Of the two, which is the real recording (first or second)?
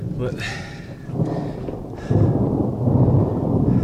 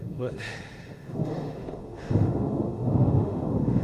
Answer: first